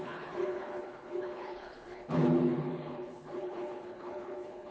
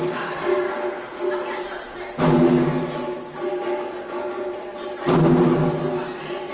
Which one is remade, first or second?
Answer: first